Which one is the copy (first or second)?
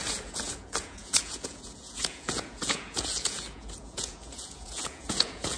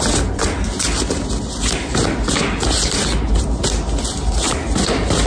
first